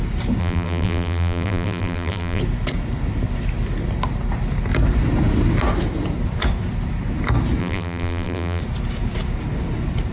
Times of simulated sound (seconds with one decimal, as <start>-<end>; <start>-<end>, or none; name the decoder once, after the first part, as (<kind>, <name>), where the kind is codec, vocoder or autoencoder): 0.4-2.4 (vocoder, BigVGAN v2); 7.6-8.6